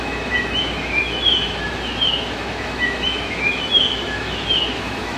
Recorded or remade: remade